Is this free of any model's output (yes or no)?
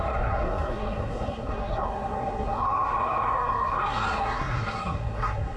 no